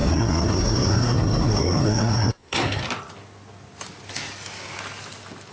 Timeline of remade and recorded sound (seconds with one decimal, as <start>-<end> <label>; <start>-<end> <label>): 0.0-2.8 remade; 2.8-5.5 recorded